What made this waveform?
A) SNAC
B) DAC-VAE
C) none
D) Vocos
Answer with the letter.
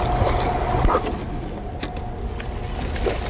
C